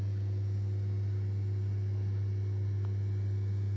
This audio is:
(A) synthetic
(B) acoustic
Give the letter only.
B